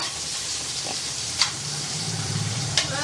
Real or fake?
fake